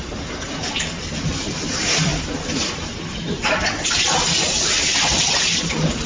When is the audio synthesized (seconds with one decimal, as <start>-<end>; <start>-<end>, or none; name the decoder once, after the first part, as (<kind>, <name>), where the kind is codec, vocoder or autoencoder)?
0.0-2.1 (vocoder, BigVGAN v2); 2.8-3.4; 4.4-6.1